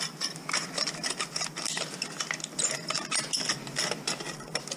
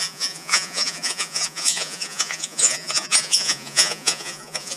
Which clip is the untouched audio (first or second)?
first